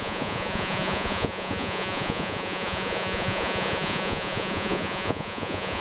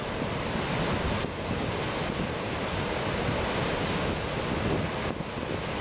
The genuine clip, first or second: second